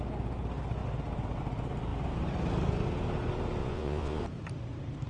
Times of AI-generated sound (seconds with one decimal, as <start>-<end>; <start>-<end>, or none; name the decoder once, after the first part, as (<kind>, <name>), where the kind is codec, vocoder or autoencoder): 3.6-4.2 (vocoder, Vocos)